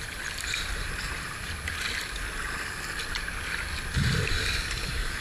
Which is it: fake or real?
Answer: real